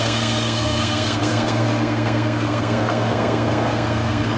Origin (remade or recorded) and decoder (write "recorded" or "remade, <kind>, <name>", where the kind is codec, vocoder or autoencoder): remade, codec, SNAC